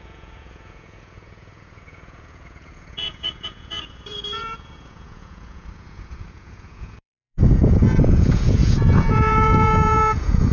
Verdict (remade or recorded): remade